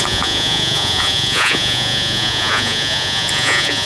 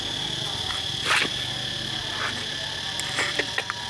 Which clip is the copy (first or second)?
first